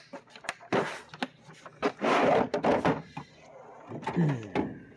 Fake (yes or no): no